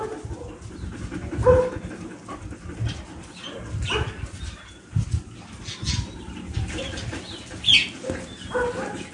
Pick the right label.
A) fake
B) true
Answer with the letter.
B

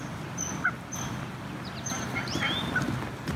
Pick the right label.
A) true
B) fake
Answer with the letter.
A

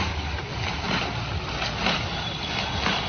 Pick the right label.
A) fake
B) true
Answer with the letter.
B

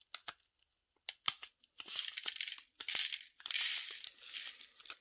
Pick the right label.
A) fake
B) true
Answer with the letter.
B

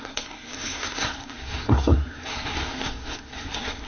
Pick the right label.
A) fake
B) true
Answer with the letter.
A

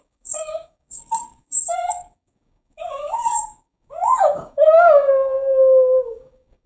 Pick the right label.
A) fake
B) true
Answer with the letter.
A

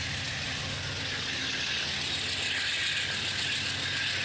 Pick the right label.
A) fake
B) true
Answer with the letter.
B